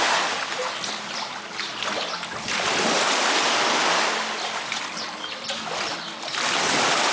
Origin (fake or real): real